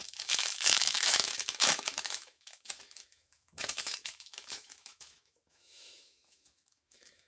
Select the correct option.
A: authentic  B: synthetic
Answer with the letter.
B